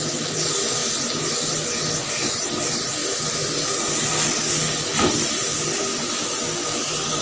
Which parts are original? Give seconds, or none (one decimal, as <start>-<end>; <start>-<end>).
0.0-7.2